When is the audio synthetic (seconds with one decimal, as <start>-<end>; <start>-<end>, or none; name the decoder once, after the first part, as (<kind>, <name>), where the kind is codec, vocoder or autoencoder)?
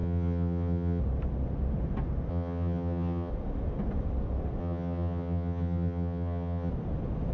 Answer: 0.0-1.0 (vocoder, HiFi-GAN); 2.3-3.3; 4.6-6.7